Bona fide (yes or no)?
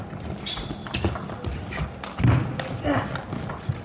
yes